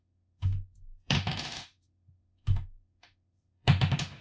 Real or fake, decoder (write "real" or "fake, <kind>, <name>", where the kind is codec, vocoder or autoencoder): fake, autoencoder, DAC-VAE